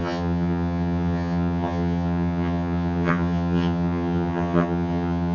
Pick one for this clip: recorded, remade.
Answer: remade